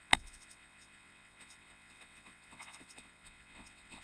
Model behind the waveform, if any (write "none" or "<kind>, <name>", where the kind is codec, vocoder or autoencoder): vocoder, WaveNeXt